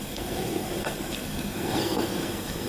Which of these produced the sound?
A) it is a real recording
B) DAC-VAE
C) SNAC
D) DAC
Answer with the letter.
C